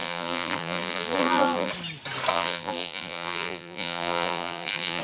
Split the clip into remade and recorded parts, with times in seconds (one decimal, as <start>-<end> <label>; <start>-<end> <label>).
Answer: 0.0-1.7 remade; 1.7-2.3 recorded; 2.3-5.0 remade